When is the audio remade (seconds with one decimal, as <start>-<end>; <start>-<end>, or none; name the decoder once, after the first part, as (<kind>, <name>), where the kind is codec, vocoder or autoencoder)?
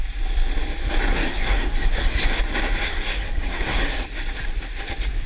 1.1-2.4 (codec, SNAC); 2.9-3.8